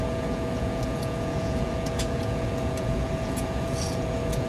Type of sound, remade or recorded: remade